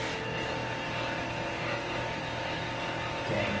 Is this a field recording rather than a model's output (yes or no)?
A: yes